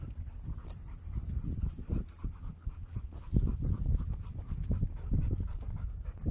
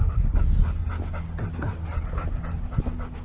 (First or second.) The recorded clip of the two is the second